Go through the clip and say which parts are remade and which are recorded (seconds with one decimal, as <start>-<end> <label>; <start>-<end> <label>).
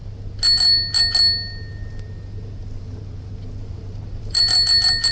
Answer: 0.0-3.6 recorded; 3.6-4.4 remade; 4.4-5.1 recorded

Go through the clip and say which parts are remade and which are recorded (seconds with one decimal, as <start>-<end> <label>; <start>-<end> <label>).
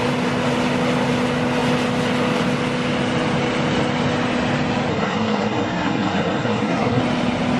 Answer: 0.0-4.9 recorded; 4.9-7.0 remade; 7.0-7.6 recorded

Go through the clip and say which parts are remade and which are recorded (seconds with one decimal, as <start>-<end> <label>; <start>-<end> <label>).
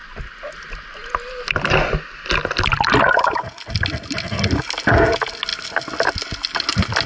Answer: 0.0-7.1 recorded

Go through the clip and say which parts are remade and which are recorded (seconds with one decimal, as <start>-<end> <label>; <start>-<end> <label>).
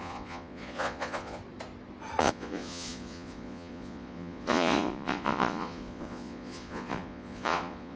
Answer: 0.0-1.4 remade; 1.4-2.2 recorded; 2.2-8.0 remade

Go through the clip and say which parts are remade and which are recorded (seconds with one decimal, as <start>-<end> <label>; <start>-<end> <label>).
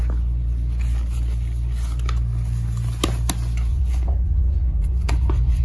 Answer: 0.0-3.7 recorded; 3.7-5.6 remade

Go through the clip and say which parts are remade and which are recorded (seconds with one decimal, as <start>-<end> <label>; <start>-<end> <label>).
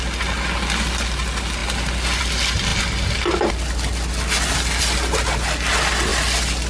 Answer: 0.0-1.6 recorded; 1.6-2.2 remade; 2.2-6.1 recorded; 6.1-6.7 remade